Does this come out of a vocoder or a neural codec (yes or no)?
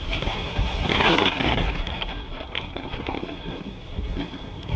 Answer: yes